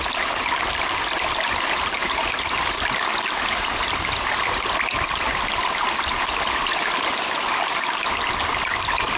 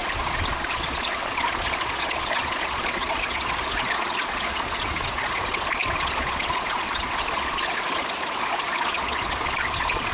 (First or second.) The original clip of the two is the first